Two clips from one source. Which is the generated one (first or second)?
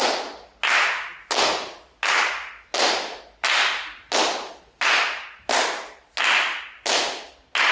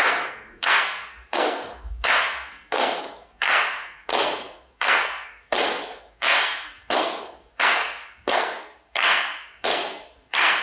second